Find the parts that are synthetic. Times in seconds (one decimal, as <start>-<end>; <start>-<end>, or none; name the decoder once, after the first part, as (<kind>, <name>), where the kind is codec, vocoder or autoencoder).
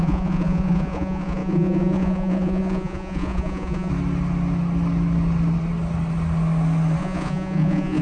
0.0-3.9 (vocoder, Vocos); 7.0-8.0